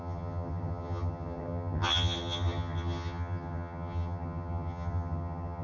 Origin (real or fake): fake